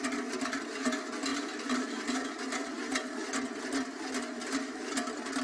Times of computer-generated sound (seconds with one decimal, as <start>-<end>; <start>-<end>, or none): none